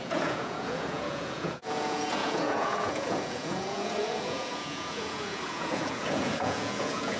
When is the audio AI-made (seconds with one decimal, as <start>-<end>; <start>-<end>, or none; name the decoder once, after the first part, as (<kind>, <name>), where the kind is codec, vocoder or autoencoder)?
0.0-7.2 (vocoder, Vocos)